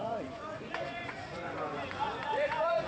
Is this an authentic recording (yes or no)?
no